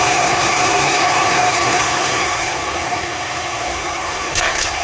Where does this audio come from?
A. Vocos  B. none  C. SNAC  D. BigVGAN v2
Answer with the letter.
C